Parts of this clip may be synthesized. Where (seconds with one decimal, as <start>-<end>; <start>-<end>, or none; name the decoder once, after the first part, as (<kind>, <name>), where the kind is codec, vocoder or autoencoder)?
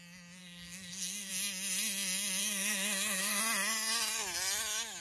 0.4-1.3 (codec, SNAC); 2.4-3.4